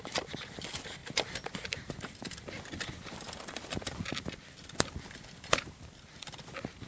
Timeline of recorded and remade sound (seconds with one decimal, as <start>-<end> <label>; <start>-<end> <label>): 0.0-6.9 recorded